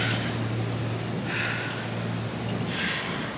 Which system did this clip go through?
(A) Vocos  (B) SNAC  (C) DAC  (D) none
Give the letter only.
D